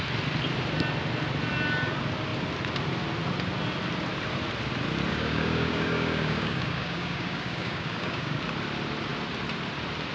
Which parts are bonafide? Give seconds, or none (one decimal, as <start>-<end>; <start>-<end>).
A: 0.0-5.1; 8.4-10.1